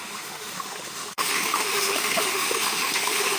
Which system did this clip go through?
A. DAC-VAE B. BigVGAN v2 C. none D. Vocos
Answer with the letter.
A